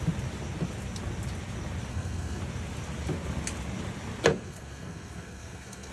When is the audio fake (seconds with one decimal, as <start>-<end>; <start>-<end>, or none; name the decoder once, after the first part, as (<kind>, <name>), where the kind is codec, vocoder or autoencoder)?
1.9-2.4 (codec, SNAC); 4.3-5.9